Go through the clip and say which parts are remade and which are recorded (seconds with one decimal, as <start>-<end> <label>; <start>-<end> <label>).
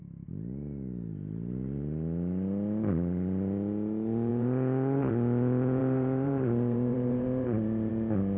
0.0-4.3 recorded; 4.3-5.1 remade; 5.1-5.8 recorded; 5.8-7.9 remade; 7.9-8.4 recorded